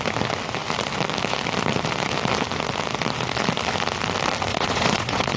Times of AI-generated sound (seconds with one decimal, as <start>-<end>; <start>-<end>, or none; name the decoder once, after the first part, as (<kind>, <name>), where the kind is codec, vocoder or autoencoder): 4.5-5.4 (vocoder, Vocos)